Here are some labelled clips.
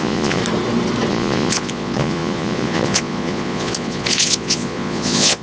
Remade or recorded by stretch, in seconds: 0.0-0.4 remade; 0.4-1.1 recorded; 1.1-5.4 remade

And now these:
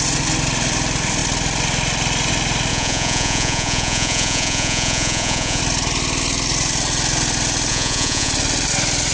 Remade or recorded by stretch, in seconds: 0.0-2.7 recorded; 2.7-5.6 remade; 5.6-7.7 recorded; 7.7-8.3 remade; 8.3-9.1 recorded

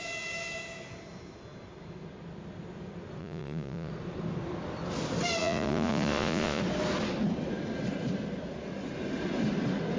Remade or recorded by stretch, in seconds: 0.0-3.2 recorded; 3.2-3.9 remade; 3.9-5.4 recorded; 5.4-6.6 remade; 6.6-10.0 recorded

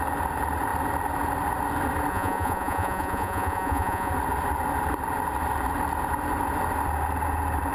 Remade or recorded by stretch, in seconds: 0.0-2.1 recorded; 2.1-4.1 remade; 4.1-7.7 recorded

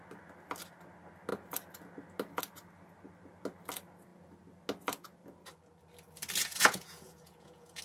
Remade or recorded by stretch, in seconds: 0.0-6.4 recorded; 6.4-7.8 remade

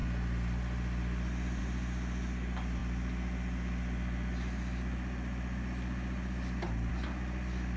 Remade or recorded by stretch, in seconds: 0.0-7.8 recorded

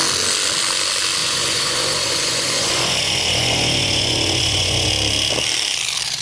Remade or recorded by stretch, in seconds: 0.0-1.2 recorded; 1.2-4.9 remade; 4.9-6.2 recorded